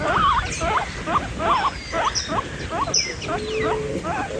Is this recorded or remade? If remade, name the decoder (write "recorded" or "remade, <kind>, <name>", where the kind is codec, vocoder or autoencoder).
recorded